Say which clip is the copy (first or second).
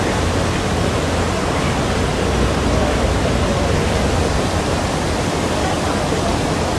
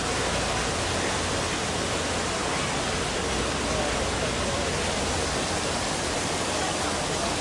first